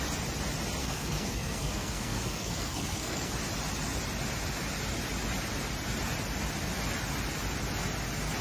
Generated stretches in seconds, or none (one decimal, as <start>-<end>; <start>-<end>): 0.8-3.3